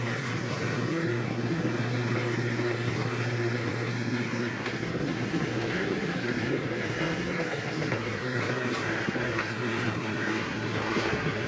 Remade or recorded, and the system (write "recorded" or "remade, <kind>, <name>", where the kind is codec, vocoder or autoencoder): remade, codec, SNAC